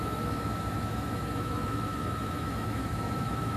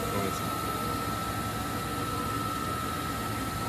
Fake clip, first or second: first